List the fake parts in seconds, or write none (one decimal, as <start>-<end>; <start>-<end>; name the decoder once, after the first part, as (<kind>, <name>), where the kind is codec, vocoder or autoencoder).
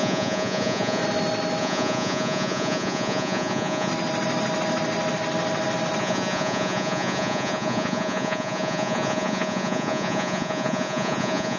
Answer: 0.0-1.0 (vocoder, Vocos); 1.6-3.9; 6.0-11.6